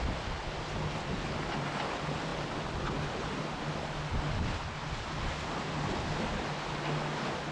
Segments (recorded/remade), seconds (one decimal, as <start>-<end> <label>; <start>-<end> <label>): 0.0-7.5 recorded